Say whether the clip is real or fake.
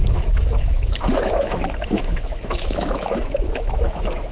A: fake